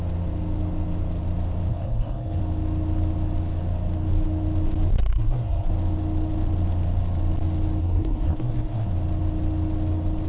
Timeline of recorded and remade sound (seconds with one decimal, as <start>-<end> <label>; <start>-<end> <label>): 0.0-1.7 recorded; 1.7-2.4 remade; 2.4-5.0 recorded; 5.0-5.7 remade; 5.7-7.8 recorded; 7.8-8.9 remade; 8.9-10.3 recorded